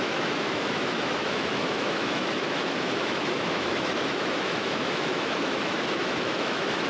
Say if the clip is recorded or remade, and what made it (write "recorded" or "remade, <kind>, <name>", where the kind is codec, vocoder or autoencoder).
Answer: remade, autoencoder, DAC-VAE